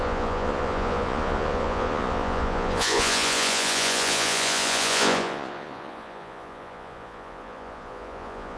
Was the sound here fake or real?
fake